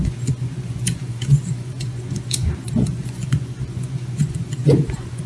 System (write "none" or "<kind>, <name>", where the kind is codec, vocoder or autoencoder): vocoder, Vocos